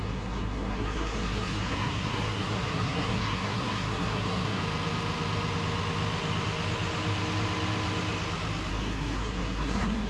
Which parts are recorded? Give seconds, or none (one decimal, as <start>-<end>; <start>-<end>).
4.6-8.7